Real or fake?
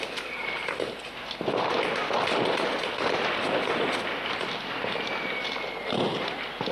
real